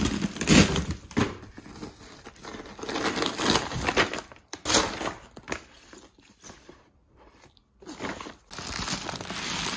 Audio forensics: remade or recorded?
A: recorded